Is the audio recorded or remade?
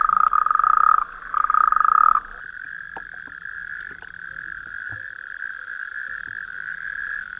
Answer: recorded